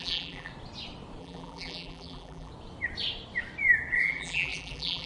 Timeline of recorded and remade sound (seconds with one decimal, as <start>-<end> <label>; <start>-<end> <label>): 0.0-0.5 remade; 0.5-1.2 recorded; 1.2-2.5 remade; 2.5-4.0 recorded; 4.0-5.1 remade